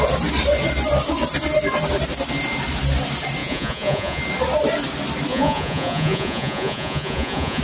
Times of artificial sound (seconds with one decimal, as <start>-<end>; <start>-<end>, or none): 3.4-4.2; 5.3-7.6